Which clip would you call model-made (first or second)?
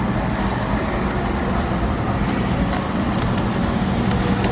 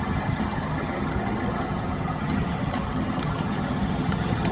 second